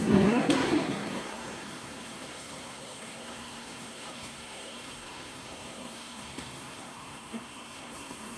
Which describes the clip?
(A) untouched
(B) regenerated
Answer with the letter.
B